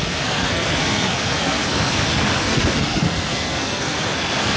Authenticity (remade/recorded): remade